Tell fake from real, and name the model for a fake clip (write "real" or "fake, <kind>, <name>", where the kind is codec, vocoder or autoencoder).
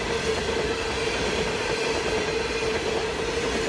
real